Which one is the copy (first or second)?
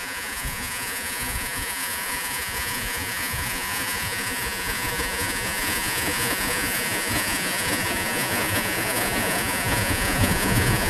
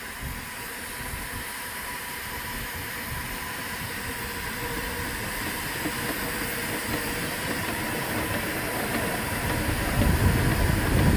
first